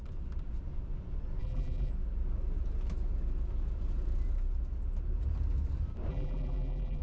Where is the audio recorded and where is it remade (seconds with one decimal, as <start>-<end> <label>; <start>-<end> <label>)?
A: 0.0-1.4 recorded; 1.4-1.9 remade; 1.9-6.1 recorded; 6.1-7.0 remade